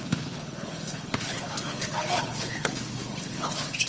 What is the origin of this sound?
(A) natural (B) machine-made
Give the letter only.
B